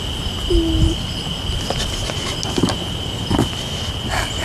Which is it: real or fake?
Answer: real